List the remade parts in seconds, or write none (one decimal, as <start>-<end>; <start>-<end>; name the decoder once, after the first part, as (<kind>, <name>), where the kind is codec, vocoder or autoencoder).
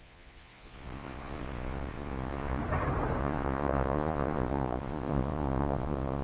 0.0-2.6 (vocoder, Vocos); 3.2-6.2